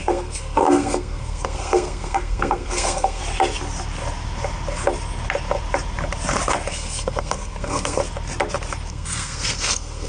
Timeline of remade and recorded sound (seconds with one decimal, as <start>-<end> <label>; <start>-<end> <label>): 0.0-3.2 remade; 3.2-6.7 recorded; 6.7-8.0 remade; 8.0-8.9 recorded; 8.9-10.1 remade